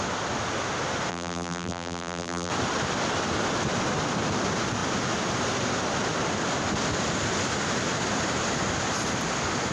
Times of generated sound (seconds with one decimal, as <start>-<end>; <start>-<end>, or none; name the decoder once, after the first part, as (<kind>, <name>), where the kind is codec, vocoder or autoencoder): 1.1-2.5 (vocoder, BigVGAN v2)